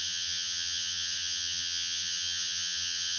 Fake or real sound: fake